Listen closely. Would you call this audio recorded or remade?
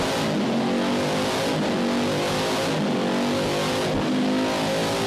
recorded